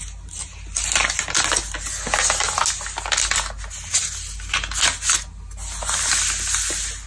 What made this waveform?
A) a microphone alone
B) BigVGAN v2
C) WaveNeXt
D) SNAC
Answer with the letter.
A